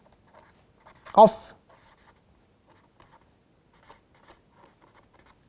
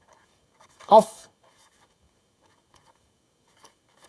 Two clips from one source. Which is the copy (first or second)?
second